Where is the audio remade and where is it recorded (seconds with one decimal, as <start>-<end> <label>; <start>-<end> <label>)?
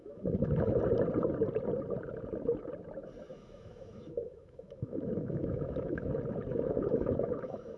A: 0.0-0.8 remade; 0.8-3.3 recorded; 3.3-6.1 remade; 6.1-6.5 recorded; 6.5-7.8 remade